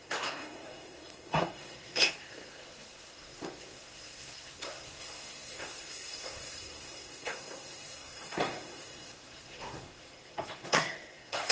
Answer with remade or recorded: remade